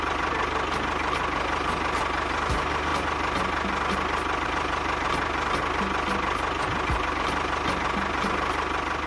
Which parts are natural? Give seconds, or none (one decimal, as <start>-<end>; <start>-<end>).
0.0-9.1